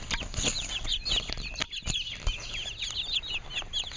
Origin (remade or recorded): recorded